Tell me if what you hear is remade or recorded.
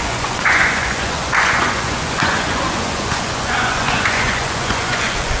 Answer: remade